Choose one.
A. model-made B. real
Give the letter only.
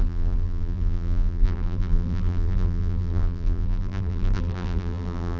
A